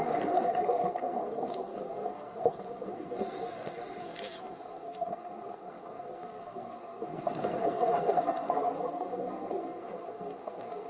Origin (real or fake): fake